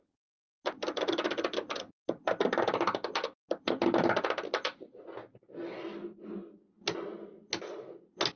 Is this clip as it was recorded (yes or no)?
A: yes